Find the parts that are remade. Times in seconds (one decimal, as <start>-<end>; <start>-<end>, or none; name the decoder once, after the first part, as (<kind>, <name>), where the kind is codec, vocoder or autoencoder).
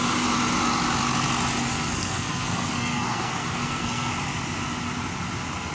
1.7-4.1 (codec, SNAC)